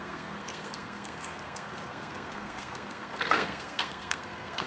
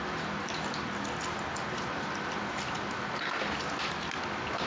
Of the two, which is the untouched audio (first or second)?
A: second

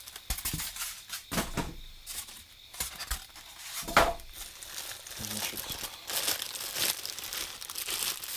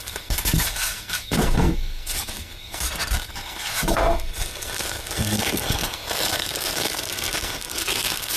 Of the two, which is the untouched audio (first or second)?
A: first